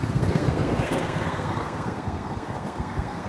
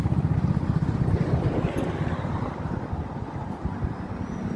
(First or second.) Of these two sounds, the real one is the second